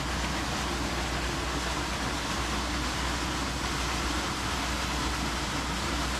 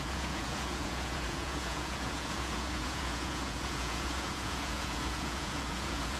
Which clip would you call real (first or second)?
first